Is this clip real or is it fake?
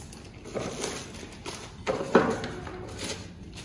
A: real